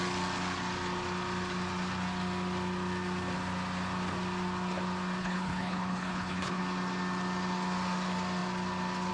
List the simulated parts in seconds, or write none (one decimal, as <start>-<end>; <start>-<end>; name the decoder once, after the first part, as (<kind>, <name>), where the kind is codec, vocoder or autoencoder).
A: 5.2-6.6 (codec, HILCodec)